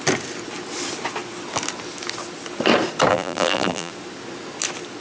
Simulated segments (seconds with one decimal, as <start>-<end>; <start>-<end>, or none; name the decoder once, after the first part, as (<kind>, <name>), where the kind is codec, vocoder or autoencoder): 3.1-3.9 (vocoder, BigVGAN v2)